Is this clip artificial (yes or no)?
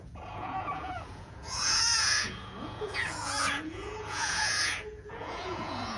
yes